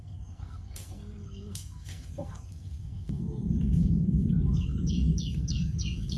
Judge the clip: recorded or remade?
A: remade